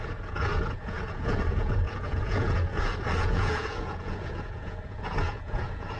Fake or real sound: fake